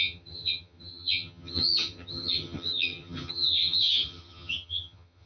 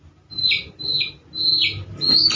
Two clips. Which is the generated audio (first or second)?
first